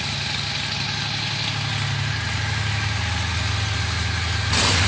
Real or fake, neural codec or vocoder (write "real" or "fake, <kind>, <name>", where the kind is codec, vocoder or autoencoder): real